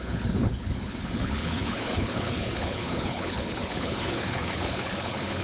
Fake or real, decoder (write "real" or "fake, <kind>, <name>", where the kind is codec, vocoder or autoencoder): fake, codec, HILCodec